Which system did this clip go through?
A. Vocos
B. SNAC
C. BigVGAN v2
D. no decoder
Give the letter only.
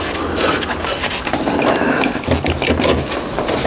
D